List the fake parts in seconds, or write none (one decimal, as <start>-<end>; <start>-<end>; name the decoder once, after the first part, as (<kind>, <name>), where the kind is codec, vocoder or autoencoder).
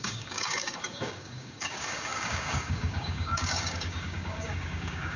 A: 0.0-5.2 (codec, DAC)